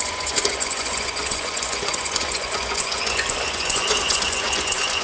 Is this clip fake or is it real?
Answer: fake